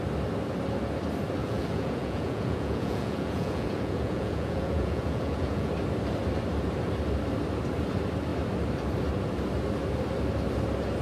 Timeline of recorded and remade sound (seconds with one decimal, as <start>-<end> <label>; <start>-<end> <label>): 0.0-1.4 recorded; 1.4-5.7 remade; 5.7-11.0 recorded